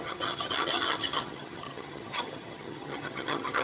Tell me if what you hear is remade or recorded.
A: remade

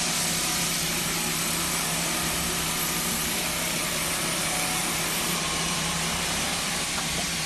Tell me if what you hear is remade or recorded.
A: remade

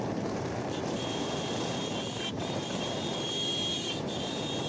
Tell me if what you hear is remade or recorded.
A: remade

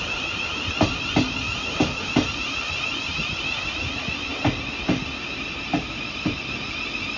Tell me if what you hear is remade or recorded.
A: recorded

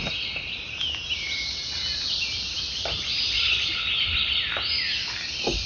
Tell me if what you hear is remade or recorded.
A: recorded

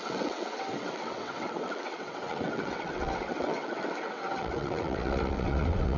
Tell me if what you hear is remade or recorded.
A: remade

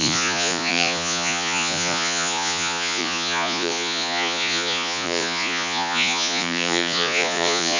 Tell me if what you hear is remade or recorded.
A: remade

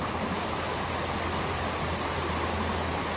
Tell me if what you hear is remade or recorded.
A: recorded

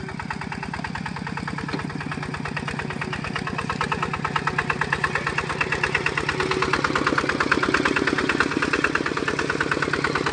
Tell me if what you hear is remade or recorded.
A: recorded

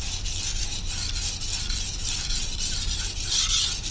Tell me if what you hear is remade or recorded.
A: recorded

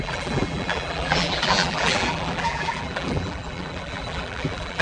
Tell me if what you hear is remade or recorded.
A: remade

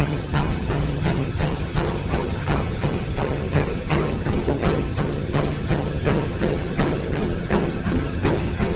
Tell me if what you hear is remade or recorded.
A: remade